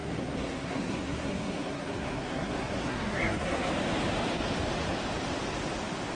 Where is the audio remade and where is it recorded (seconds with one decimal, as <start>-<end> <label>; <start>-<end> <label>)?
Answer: 0.0-3.7 remade; 3.7-6.1 recorded